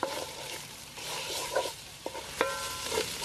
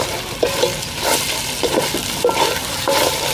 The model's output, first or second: first